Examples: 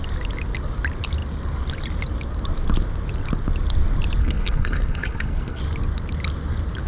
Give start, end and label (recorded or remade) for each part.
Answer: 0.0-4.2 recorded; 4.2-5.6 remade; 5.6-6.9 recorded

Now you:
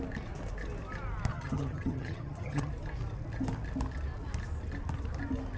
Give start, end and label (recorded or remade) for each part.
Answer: 0.0-1.3 recorded; 1.3-2.7 remade; 2.7-5.6 recorded

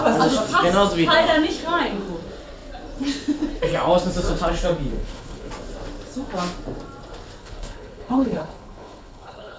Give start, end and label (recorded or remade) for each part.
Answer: 0.0-4.9 recorded; 4.9-5.5 remade; 5.5-7.4 recorded; 7.4-9.6 remade

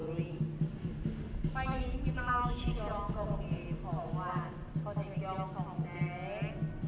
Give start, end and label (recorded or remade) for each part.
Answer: 0.0-1.8 remade; 1.8-2.9 recorded; 2.9-3.6 remade; 3.6-6.9 recorded

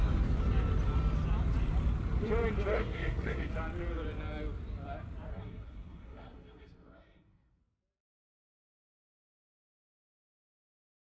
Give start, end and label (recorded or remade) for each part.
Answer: 0.0-2.7 recorded; 2.7-3.5 remade; 3.5-5.3 recorded; 5.3-7.6 remade; 7.6-11.2 recorded

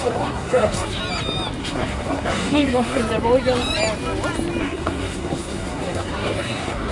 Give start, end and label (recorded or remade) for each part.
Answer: 0.0-1.0 remade; 1.0-1.6 recorded; 1.6-3.0 remade; 3.0-4.6 recorded; 4.6-6.9 remade

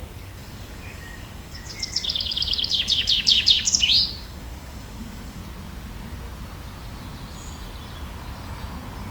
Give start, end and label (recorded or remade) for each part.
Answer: 0.0-5.4 remade; 5.4-9.1 recorded

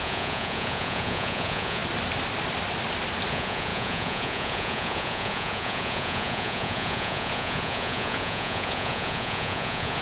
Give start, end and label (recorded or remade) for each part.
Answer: 0.0-1.8 remade; 1.8-3.3 recorded; 3.3-10.0 remade